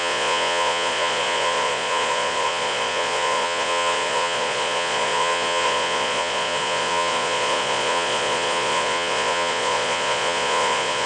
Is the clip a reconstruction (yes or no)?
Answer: yes